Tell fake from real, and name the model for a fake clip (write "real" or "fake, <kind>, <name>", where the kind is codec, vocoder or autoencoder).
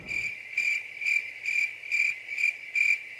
real